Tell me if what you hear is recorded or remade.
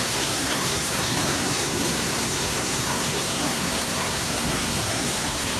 remade